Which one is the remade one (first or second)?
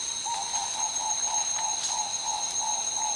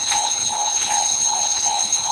second